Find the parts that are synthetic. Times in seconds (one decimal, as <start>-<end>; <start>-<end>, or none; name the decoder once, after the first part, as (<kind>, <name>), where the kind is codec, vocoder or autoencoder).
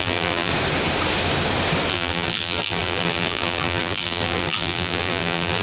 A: 0.0-0.5 (vocoder, BigVGAN v2); 1.9-5.6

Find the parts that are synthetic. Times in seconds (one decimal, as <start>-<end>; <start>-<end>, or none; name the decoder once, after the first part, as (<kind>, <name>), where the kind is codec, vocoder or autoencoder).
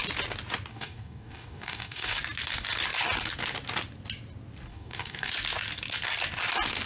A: 0.7-2.2 (codec, DAC); 4.7-5.3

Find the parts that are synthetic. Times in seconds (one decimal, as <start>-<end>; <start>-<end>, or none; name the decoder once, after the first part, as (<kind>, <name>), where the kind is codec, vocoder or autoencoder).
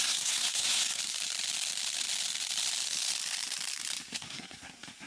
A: 0.0-1.0 (codec, SNAC); 4.1-5.1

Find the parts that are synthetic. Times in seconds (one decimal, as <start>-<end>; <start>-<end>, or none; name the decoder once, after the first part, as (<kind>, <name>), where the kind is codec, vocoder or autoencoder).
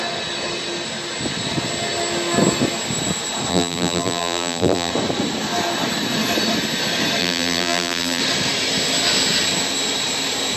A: 3.5-4.9 (vocoder, BigVGAN v2); 7.2-8.2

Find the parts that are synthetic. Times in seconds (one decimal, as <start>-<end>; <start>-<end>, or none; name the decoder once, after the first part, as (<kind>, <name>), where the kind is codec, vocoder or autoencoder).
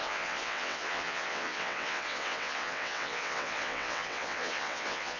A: 0.0-5.2 (vocoder, WaveNeXt)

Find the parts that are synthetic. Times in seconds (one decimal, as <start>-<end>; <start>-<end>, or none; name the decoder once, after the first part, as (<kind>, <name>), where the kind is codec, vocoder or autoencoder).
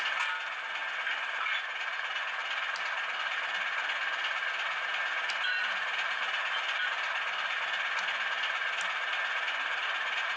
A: none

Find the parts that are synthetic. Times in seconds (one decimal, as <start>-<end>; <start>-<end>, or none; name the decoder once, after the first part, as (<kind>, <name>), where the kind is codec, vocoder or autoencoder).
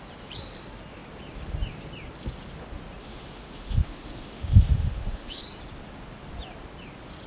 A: 3.0-5.4 (autoencoder, DAC-VAE)